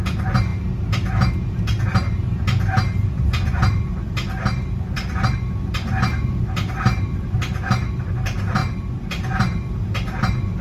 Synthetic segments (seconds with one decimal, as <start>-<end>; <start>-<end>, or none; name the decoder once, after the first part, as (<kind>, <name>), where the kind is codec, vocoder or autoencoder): none